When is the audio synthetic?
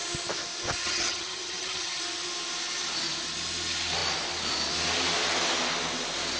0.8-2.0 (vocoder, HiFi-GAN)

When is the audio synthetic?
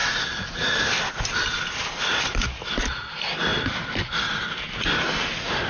none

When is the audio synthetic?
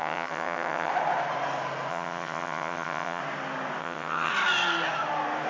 0.0-0.9 (vocoder, HiFi-GAN); 1.9-3.2; 3.8-4.3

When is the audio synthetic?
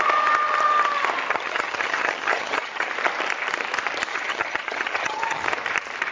1.3-2.9 (vocoder, HiFi-GAN); 4.1-5.4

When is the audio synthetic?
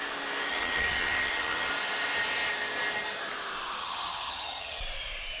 0.5-1.7 (vocoder, HiFi-GAN); 3.8-4.8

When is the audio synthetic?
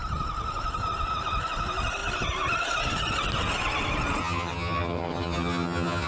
4.2-6.1 (vocoder, HiFi-GAN)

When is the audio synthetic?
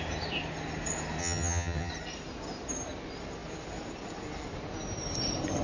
1.2-1.9 (vocoder, HiFi-GAN)